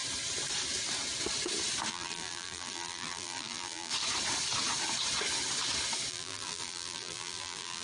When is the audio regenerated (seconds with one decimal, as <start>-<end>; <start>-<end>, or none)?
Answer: 1.9-3.9; 6.1-7.8